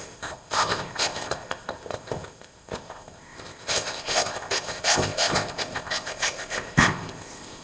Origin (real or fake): fake